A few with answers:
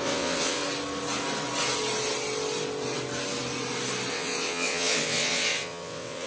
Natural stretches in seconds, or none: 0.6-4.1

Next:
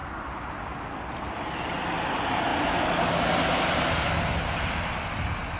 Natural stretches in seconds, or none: 0.0-5.6

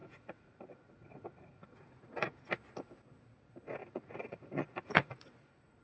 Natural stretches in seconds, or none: 2.5-3.8

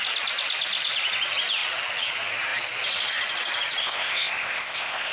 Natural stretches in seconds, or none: 0.0-3.8

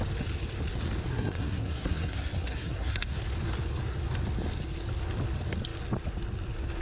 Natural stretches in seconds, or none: 0.0-1.1; 3.2-6.8

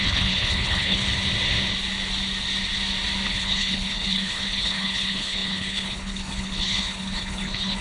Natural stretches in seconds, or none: 1.0-3.3

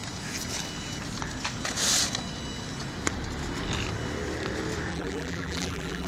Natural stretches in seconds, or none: 0.0-4.9